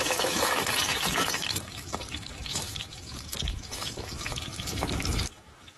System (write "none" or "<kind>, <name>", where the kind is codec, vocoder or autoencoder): autoencoder, DAC-VAE